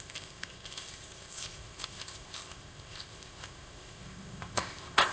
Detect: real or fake fake